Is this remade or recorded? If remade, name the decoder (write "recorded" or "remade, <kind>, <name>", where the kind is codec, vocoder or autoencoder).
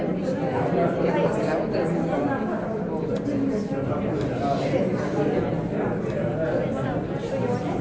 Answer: recorded